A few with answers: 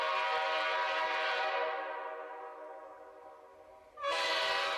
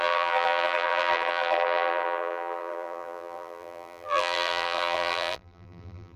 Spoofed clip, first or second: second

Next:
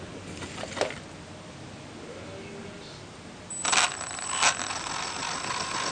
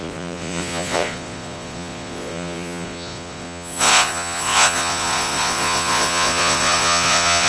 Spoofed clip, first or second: second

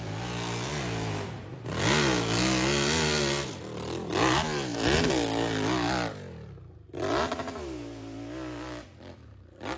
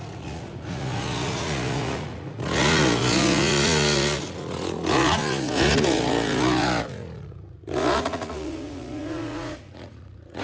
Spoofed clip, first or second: second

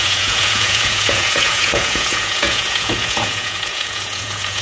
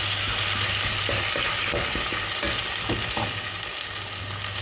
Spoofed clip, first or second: first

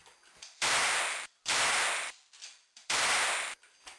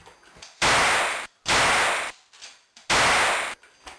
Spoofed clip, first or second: first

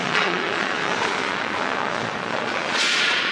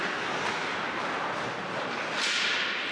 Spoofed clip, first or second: first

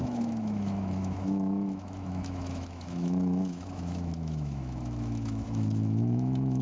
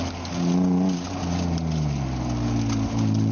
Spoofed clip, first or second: first